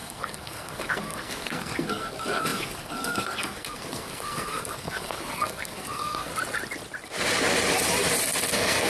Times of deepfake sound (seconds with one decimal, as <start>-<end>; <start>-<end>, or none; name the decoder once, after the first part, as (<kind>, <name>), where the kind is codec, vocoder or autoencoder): 0.0-6.3 (codec, SNAC); 8.5-8.9